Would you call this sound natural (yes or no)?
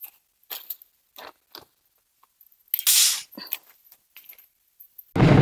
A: yes